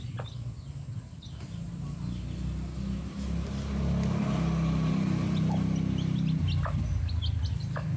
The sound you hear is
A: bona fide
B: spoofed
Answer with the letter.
A